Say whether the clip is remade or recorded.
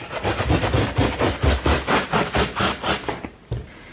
recorded